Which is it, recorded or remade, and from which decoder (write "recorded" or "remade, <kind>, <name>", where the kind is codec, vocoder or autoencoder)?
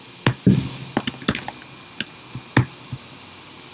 recorded